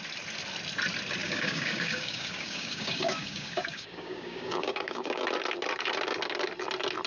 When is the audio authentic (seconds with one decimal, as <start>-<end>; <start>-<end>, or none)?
0.0-1.2; 5.2-7.1